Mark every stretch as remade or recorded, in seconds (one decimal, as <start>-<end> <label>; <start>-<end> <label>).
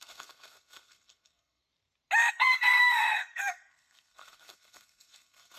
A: 0.0-1.6 remade; 1.6-2.3 recorded; 2.3-5.6 remade